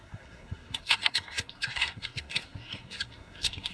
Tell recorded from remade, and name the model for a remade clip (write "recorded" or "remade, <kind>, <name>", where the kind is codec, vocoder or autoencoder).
remade, codec, SNAC